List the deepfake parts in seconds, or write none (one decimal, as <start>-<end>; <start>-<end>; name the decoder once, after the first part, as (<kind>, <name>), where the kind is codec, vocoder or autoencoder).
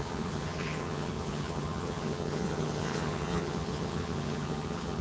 0.0-5.0 (vocoder, HiFi-GAN)